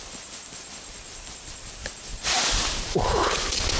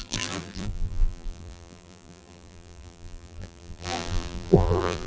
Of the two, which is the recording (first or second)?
first